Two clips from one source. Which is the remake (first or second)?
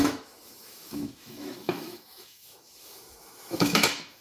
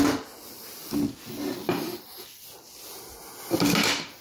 first